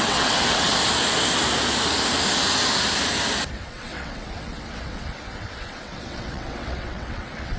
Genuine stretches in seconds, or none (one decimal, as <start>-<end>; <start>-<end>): 0.7-3.5